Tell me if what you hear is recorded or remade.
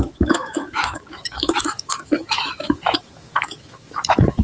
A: remade